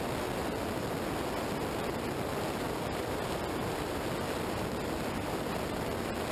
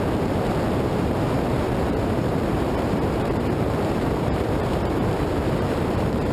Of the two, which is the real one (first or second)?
first